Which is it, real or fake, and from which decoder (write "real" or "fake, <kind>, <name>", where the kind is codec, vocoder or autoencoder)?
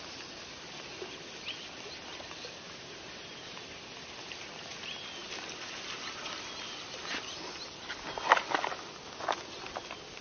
real